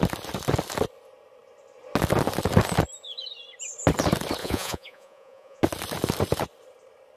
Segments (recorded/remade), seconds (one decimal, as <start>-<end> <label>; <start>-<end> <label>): 0.0-4.4 recorded; 4.4-5.6 remade; 5.6-7.2 recorded